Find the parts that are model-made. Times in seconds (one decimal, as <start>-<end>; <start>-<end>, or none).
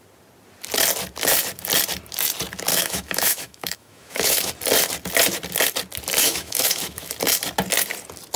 2.7-4.5; 6.2-7.1